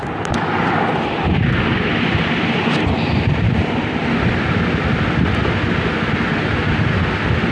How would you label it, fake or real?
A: real